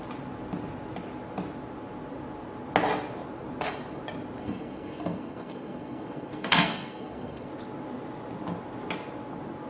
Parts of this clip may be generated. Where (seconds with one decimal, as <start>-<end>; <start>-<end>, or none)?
4.4-7.5